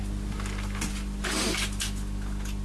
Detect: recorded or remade recorded